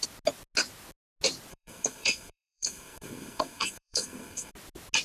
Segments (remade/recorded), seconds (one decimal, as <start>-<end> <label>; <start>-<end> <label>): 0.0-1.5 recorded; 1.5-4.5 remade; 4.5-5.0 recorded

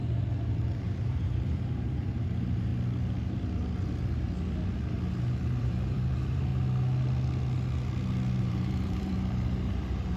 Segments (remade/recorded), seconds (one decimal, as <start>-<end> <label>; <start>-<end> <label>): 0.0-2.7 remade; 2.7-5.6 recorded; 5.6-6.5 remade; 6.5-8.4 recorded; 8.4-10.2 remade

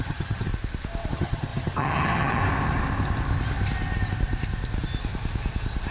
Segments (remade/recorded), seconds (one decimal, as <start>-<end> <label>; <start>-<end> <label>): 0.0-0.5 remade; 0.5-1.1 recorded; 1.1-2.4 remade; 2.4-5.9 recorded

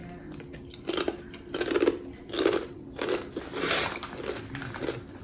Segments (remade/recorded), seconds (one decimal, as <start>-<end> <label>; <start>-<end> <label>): 0.0-5.2 recorded

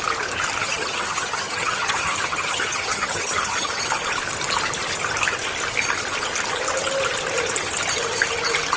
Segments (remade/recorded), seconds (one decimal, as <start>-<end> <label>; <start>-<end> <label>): 0.0-0.6 recorded; 0.6-3.8 remade; 3.8-8.8 recorded

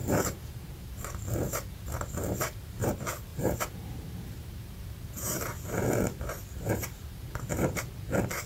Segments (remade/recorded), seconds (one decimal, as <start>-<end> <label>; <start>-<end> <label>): 0.0-2.9 remade; 2.9-3.3 recorded; 3.3-7.8 remade; 7.8-8.5 recorded

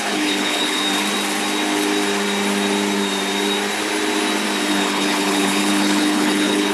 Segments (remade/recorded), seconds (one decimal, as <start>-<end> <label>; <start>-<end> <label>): 0.0-0.8 remade; 0.8-4.7 recorded; 4.7-6.7 remade

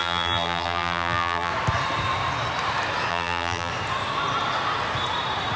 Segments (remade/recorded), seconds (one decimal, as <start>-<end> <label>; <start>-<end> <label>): 0.0-1.5 remade; 1.5-3.1 recorded; 3.1-3.7 remade; 3.7-5.6 recorded